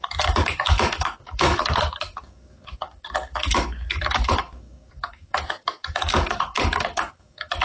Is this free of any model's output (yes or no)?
no